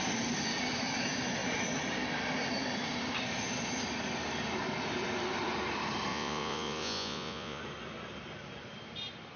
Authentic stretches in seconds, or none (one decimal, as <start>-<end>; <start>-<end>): 0.0-6.1; 7.6-9.4